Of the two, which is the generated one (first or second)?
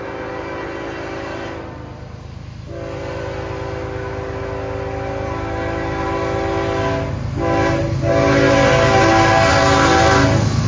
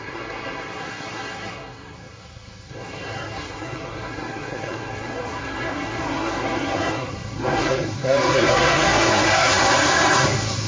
second